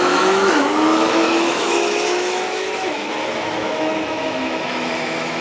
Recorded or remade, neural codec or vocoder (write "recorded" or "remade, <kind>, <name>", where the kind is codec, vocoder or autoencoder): remade, autoencoder, DAC-VAE